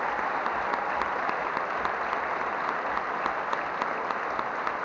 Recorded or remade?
recorded